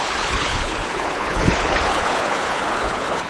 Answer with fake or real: fake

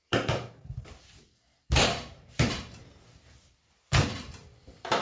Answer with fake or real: fake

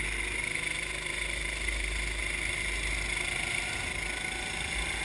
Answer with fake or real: real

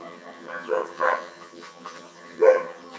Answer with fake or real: fake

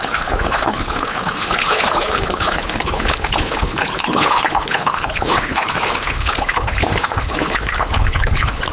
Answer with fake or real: fake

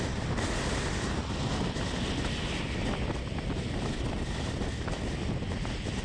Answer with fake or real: real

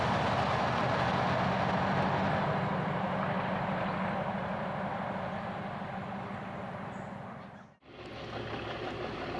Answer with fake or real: real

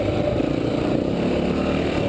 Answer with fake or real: real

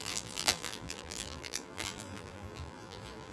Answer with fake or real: fake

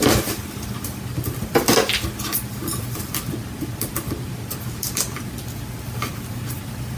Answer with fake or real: fake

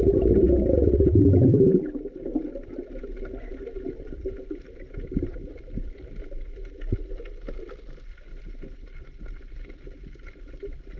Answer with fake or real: real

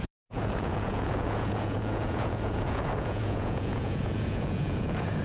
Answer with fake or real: fake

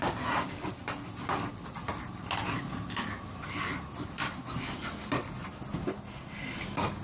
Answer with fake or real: real